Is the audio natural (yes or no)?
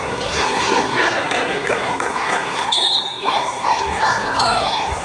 no